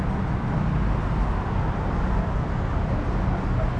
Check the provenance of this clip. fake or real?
real